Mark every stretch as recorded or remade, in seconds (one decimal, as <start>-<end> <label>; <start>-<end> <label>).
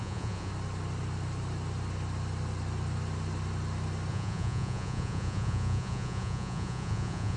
0.0-0.5 remade; 0.5-4.1 recorded; 4.1-7.4 remade